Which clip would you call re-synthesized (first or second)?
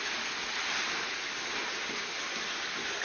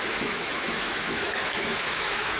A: second